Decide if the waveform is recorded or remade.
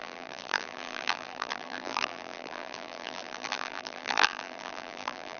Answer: remade